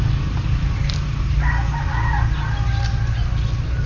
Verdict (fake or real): real